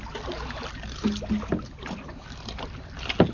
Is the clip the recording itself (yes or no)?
yes